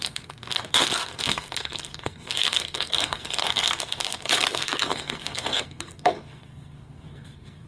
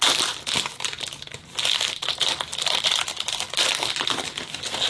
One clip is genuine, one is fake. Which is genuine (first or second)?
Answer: second